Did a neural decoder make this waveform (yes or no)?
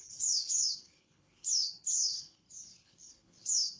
yes